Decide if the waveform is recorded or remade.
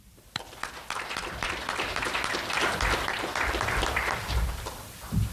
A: remade